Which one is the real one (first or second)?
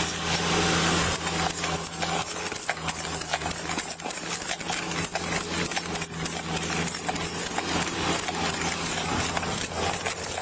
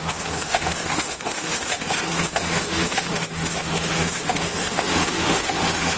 first